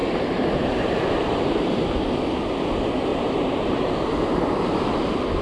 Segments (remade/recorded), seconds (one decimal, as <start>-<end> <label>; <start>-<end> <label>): 0.0-1.8 remade; 1.8-3.1 recorded; 3.1-5.0 remade; 5.0-5.4 recorded